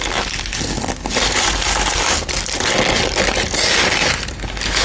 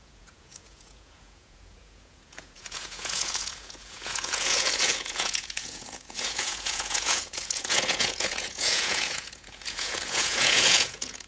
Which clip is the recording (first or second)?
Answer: first